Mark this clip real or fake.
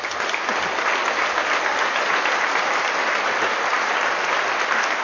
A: real